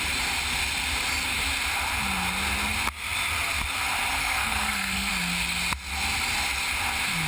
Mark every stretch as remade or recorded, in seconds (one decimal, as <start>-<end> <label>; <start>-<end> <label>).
0.0-4.2 recorded; 4.2-5.1 remade; 5.1-7.3 recorded